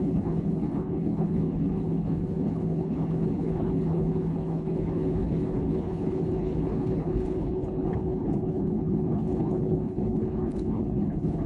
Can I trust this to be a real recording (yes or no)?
no